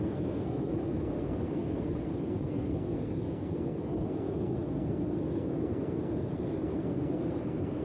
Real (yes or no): no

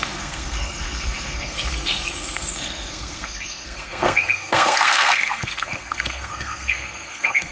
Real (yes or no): no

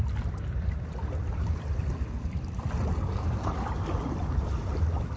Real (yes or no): yes